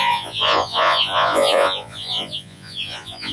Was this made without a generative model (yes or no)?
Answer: no